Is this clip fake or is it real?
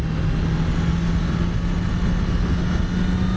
real